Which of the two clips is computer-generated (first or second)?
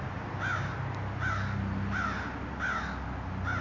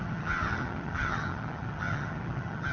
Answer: second